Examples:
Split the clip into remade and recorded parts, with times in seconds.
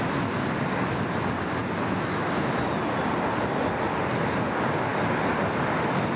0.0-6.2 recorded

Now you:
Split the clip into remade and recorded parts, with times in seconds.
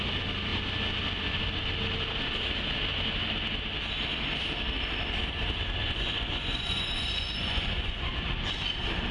0.0-5.8 recorded; 5.8-8.1 remade; 8.1-9.1 recorded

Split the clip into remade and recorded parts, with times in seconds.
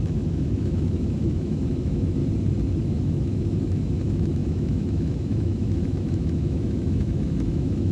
0.0-2.2 remade; 2.2-2.8 recorded; 2.8-7.9 remade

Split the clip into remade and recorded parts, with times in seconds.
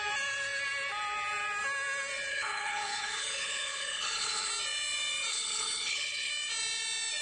0.0-2.3 recorded; 2.3-4.5 remade; 4.5-5.3 recorded; 5.3-6.3 remade; 6.3-7.2 recorded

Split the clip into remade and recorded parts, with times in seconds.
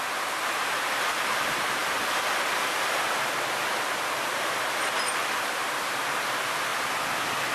0.0-1.8 recorded; 1.8-3.9 remade; 3.9-5.2 recorded; 5.2-5.9 remade; 5.9-6.7 recorded; 6.7-7.5 remade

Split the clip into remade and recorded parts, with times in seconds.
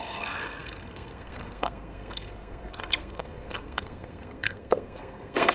0.0-5.5 remade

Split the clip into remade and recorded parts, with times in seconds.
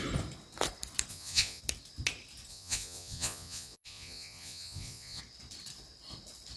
0.0-1.1 recorded; 1.1-1.6 remade; 1.6-2.5 recorded; 2.5-5.2 remade; 5.2-6.6 recorded